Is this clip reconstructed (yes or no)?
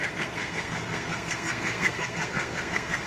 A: yes